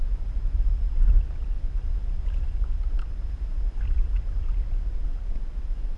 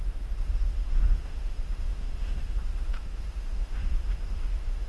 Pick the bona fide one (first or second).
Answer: first